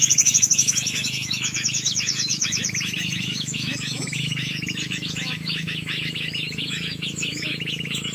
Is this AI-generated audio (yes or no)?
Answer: yes